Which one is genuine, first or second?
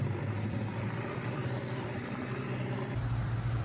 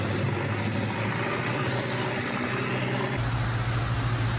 second